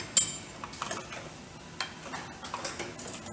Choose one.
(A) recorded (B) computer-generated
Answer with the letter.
A